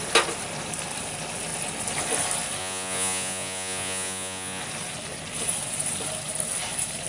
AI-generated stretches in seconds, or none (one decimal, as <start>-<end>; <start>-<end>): 2.6-4.6